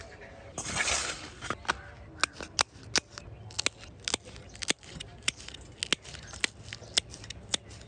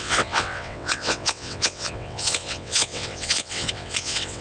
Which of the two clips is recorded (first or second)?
first